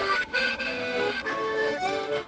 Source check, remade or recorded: remade